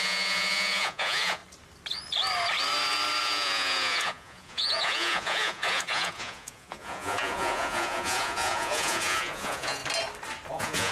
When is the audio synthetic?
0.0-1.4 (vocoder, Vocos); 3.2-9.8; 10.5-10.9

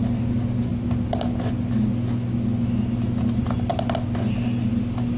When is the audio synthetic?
0.7-1.5 (vocoder, BigVGAN v2)

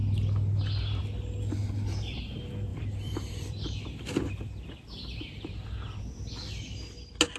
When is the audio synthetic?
2.7-4.3 (vocoder, BigVGAN v2)